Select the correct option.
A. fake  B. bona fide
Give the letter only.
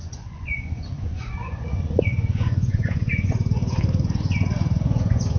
A